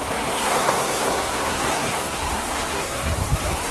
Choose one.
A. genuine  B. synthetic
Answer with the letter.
B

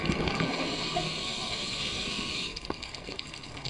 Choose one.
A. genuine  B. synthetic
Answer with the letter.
B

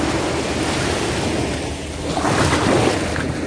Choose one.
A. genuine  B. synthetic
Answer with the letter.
A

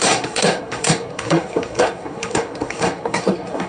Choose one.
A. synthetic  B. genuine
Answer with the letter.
A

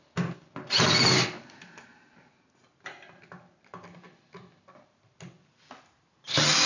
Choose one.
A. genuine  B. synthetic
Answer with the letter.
A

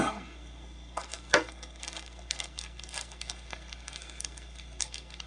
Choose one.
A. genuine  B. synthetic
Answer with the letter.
B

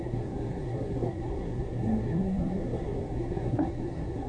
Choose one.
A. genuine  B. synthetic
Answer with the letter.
B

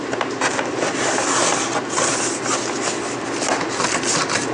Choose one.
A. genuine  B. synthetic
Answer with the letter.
A